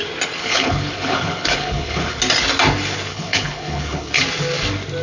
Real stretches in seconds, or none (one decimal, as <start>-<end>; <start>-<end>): 0.0-0.4; 2.2-3.1; 4.2-5.0